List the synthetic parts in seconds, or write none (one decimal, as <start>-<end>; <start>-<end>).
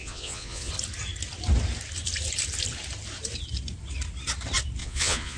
0.0-0.7; 4.8-5.4